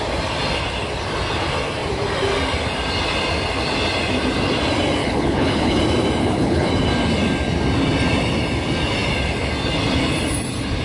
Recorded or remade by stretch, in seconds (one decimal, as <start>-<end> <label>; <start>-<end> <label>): 0.0-5.0 recorded; 5.0-5.8 remade; 5.8-6.2 recorded; 6.2-6.7 remade; 6.7-10.8 recorded